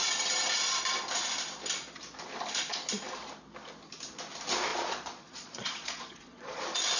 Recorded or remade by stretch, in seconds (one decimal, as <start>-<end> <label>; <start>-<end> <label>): 0.0-4.7 recorded; 4.7-6.6 remade; 6.6-7.0 recorded